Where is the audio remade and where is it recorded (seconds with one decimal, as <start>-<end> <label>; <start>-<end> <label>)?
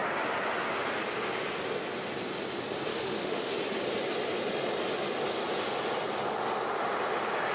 0.0-2.9 recorded; 2.9-3.5 remade; 3.5-7.5 recorded